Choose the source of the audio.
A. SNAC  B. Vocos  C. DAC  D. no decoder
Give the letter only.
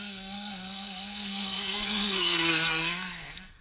A